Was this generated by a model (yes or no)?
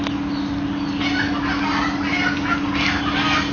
no